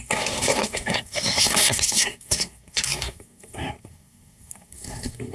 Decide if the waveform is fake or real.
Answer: fake